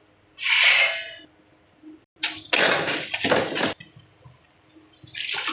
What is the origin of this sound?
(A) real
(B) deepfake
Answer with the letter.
A